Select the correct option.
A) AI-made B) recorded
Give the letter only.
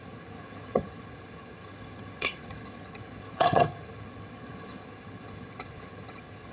A